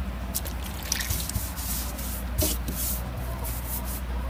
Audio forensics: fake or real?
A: real